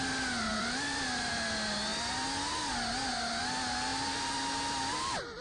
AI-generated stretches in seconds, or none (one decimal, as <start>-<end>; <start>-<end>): 0.5-1.3; 3.9-5.4